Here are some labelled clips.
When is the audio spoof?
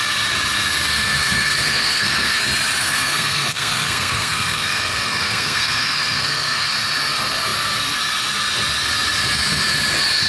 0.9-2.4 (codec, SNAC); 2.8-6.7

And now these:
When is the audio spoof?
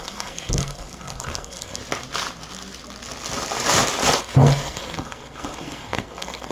0.0-1.8 (codec, SNAC); 4.2-6.5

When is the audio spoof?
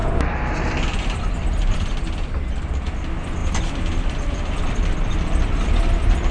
none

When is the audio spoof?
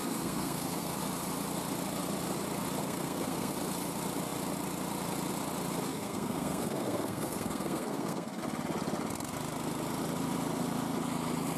0.0-1.0 (codec, SNAC); 2.8-3.5; 5.9-8.4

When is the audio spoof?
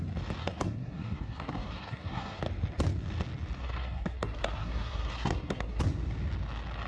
0.4-2.4 (codec, SNAC); 3.6-5.8